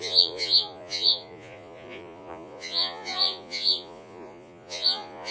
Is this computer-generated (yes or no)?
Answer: yes